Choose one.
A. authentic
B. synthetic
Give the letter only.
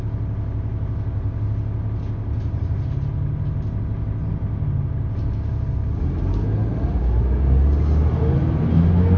A